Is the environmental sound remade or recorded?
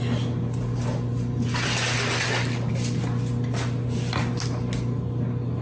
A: recorded